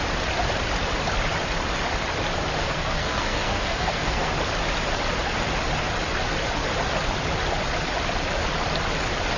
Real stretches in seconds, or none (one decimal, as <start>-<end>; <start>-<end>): 0.0-2.6; 4.3-9.4